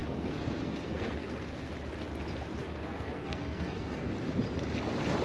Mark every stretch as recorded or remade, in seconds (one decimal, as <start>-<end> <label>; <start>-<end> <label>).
0.0-1.7 remade; 1.7-2.6 recorded; 2.6-4.1 remade; 4.1-5.2 recorded